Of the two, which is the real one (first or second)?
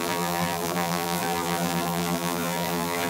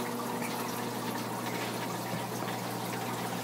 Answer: second